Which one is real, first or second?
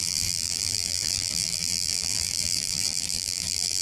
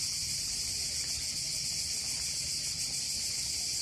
second